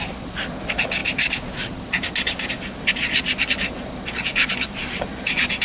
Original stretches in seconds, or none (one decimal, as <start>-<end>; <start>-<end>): 0.0-5.6